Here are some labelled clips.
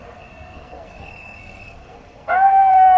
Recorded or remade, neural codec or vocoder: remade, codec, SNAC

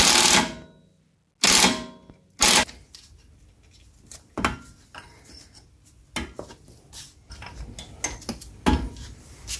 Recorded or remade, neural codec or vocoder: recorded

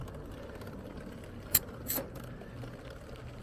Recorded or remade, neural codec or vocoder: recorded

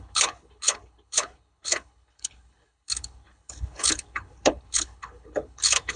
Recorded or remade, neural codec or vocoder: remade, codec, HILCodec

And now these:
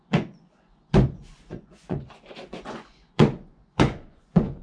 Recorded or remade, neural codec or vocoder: remade, vocoder, Vocos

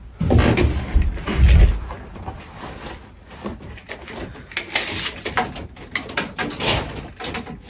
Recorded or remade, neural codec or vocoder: recorded